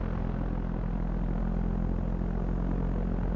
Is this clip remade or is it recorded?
recorded